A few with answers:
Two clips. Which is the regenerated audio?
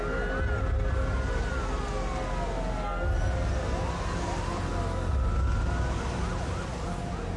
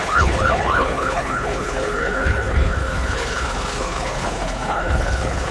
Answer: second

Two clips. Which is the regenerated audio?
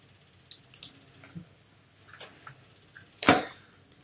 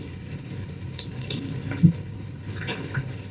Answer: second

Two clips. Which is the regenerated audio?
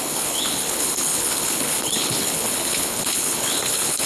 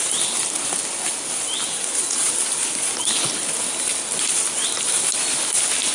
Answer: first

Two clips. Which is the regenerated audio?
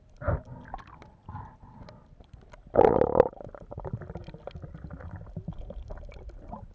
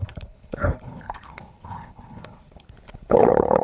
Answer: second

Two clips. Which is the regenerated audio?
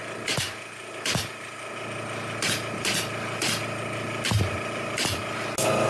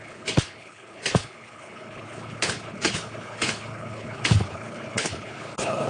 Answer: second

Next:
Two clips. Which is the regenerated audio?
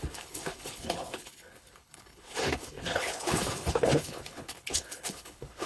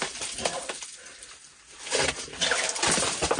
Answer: first